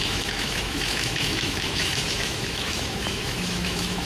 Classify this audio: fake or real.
fake